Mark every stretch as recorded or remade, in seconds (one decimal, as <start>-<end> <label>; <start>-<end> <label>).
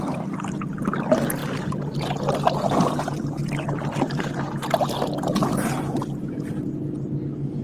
0.0-7.6 recorded